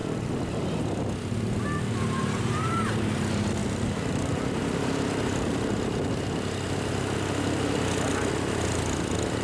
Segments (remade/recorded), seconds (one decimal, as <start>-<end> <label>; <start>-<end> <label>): 0.0-0.8 remade; 0.8-2.2 recorded; 2.2-2.8 remade; 2.8-3.6 recorded; 3.6-4.6 remade; 4.6-9.4 recorded